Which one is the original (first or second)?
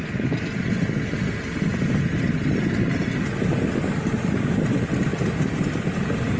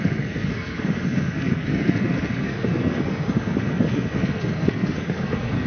first